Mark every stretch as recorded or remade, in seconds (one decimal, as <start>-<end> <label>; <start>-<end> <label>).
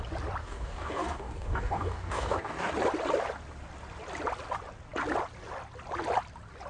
0.0-0.4 recorded; 0.4-2.7 remade; 2.7-6.7 recorded